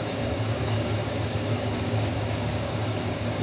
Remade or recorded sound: remade